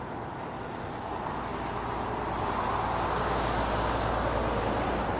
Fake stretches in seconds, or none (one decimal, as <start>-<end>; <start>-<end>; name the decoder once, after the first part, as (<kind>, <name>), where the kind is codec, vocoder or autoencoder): none